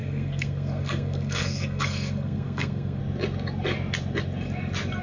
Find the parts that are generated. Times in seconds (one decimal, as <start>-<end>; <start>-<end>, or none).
0.0-3.0